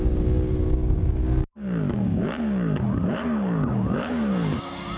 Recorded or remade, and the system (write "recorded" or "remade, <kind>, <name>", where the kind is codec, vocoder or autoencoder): remade, codec, DAC